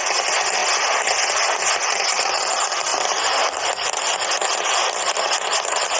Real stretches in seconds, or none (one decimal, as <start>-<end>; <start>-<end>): 0.0-2.9